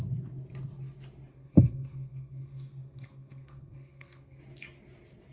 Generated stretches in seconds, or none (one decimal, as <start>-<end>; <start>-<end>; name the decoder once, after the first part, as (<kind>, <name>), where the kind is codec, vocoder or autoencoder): 1.3-4.4 (codec, SNAC)